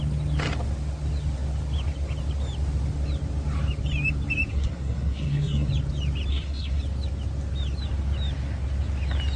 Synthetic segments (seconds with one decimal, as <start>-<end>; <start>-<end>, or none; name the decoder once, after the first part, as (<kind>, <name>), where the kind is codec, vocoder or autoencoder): 4.5-5.7 (codec, SNAC); 6.3-6.8